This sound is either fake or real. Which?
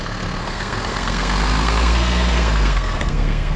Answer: fake